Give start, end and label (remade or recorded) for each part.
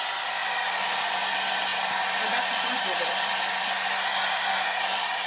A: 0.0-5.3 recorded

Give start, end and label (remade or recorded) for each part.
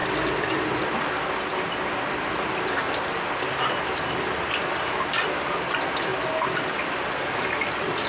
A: 0.0-8.1 recorded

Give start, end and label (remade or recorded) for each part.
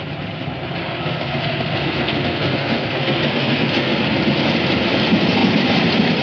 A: 0.0-0.8 recorded; 0.8-4.0 remade; 4.0-6.2 recorded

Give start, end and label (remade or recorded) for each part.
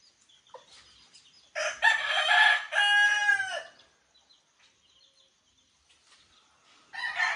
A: 0.0-7.4 recorded